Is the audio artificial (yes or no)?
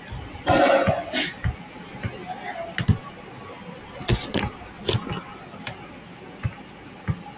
no